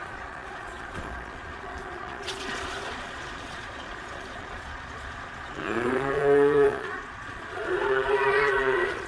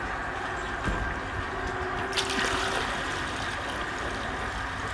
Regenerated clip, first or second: first